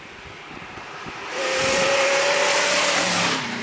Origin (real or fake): fake